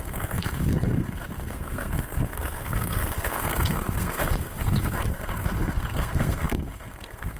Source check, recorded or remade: remade